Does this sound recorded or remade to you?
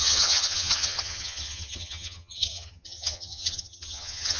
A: remade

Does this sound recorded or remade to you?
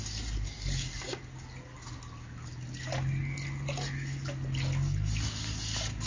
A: recorded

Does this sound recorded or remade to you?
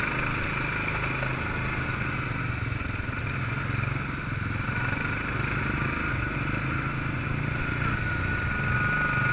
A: recorded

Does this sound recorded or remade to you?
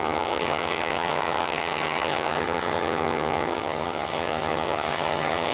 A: remade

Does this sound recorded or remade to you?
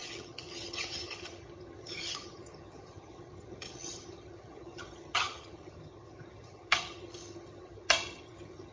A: remade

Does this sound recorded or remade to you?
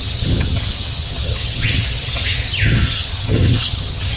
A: remade